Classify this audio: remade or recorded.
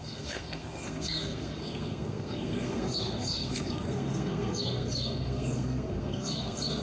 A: remade